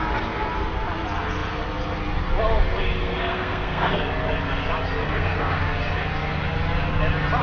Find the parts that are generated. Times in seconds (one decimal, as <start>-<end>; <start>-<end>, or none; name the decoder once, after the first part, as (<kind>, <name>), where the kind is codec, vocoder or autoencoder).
3.0-4.0 (codec, SNAC); 5.0-5.6